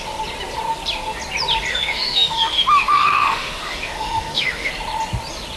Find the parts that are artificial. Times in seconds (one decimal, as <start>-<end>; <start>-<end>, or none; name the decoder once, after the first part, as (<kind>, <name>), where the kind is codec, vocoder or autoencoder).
1.7-4.7 (autoencoder, DAC-VAE)